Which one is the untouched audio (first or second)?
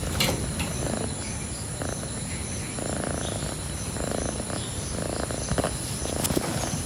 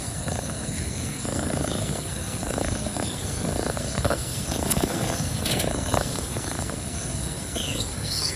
first